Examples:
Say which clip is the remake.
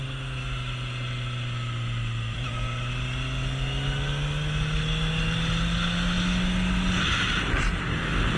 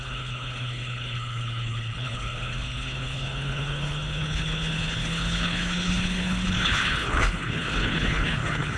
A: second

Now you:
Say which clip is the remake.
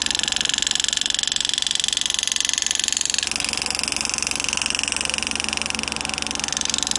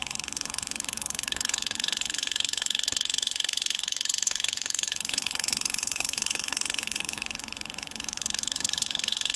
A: second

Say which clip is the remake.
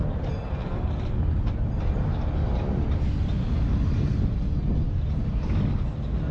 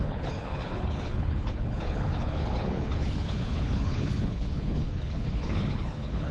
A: second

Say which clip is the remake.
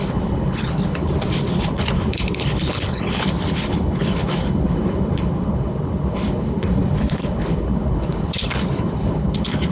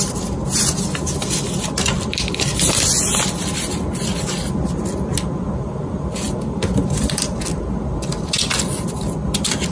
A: first